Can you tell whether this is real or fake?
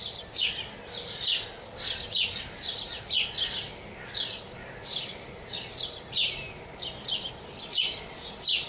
real